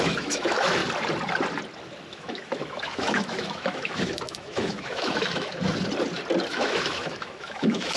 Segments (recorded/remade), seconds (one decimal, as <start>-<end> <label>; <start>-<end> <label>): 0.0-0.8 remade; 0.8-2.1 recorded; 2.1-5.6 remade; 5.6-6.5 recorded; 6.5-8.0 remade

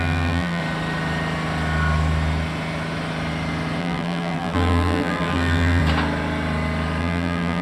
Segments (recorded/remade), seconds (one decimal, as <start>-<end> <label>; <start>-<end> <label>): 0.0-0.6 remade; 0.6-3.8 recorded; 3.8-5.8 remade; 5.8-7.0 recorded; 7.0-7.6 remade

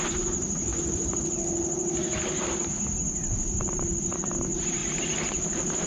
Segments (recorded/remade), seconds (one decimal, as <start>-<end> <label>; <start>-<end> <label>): 0.0-0.7 remade; 0.7-4.2 recorded; 4.2-4.8 remade; 4.8-5.9 recorded

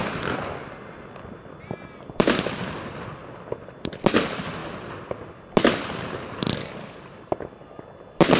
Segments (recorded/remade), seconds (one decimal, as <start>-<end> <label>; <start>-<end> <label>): 0.0-8.4 recorded

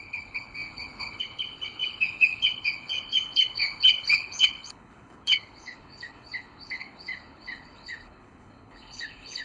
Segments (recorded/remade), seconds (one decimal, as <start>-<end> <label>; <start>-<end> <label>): 0.0-9.4 remade